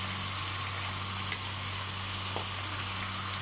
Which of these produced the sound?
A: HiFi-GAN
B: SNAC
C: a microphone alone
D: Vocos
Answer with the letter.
C